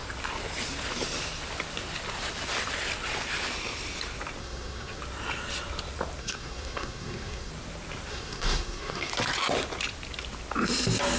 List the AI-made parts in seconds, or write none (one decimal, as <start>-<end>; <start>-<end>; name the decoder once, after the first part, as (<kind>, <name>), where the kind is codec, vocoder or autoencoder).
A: 4.4-5.0 (codec, SNAC); 6.2-7.5; 8.1-9.1